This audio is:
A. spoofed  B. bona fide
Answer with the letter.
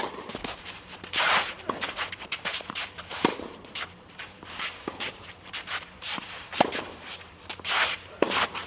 A